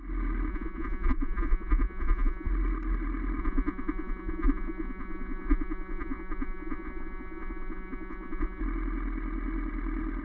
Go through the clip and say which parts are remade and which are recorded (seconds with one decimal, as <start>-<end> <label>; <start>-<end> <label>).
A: 0.0-0.5 recorded; 0.5-2.5 remade; 2.5-3.4 recorded; 3.4-8.6 remade; 8.6-10.2 recorded